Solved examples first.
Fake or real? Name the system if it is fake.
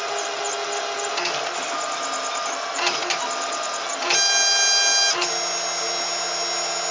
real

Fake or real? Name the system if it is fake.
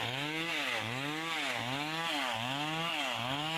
fake, codec, DAC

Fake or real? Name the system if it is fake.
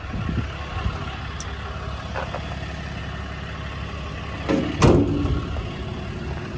real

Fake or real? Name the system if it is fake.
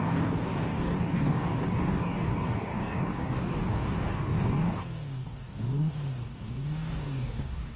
fake, codec, DAC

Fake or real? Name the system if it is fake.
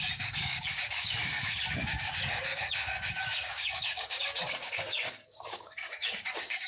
fake, codec, DAC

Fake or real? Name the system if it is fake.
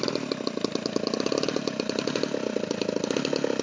real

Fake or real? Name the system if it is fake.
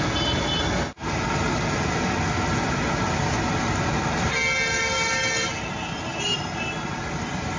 real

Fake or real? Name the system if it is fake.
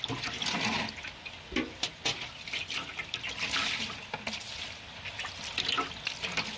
real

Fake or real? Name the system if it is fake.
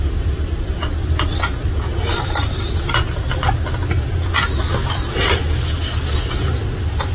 real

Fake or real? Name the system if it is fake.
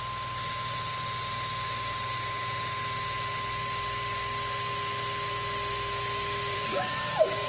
real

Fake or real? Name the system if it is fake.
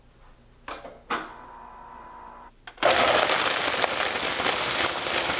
real